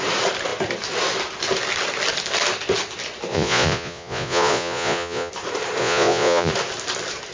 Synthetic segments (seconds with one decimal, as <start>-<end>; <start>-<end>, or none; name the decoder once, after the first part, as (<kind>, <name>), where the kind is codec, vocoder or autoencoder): 3.3-5.3 (vocoder, Vocos); 5.8-6.5